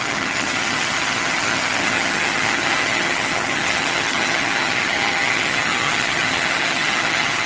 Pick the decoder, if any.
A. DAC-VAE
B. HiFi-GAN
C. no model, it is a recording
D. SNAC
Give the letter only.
B